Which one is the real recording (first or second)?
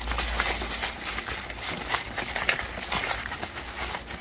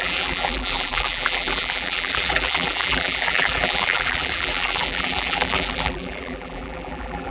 first